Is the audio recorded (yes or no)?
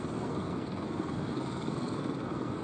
no